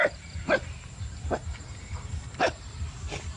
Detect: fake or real fake